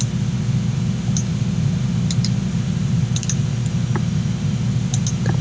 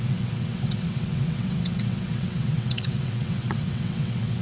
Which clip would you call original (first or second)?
first